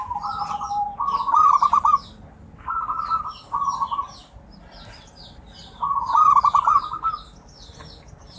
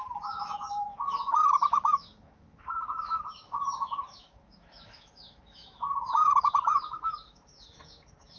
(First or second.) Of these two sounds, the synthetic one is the second